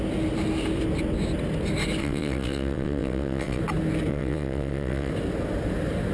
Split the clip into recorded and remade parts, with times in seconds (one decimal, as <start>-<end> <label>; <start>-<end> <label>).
0.0-2.0 recorded; 2.0-3.6 remade; 3.6-4.1 recorded; 4.1-5.1 remade; 5.1-6.1 recorded